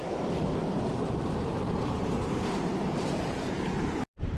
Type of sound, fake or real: fake